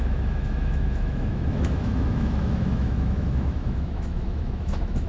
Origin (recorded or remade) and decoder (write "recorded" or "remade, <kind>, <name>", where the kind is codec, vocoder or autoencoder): remade, autoencoder, DAC-VAE